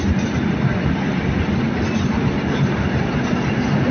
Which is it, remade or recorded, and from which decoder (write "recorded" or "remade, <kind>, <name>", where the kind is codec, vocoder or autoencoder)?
recorded